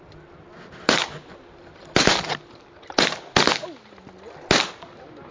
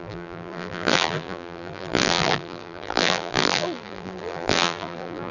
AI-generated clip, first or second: second